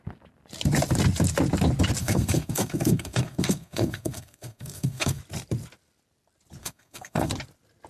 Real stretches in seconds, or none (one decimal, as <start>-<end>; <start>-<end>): 0.0-2.0; 5.2-6.6; 7.3-7.9